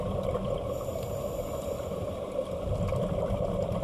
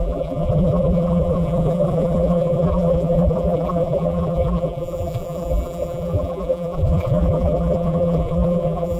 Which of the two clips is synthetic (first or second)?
second